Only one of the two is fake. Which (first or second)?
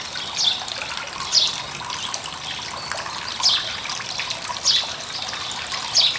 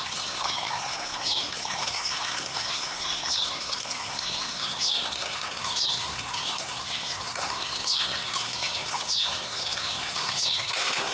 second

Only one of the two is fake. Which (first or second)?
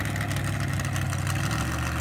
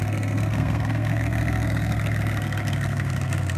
second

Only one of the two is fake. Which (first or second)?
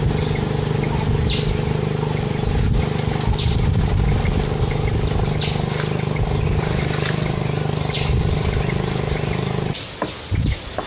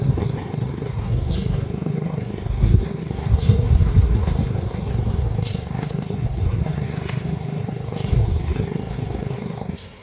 second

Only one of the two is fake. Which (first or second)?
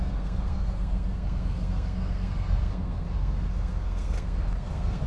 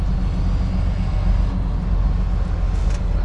first